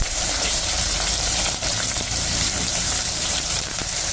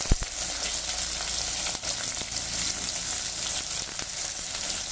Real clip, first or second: second